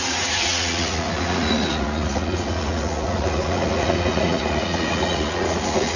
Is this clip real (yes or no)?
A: no